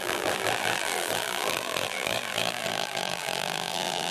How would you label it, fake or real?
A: fake